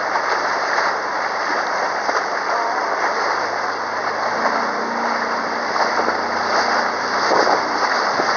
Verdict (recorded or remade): recorded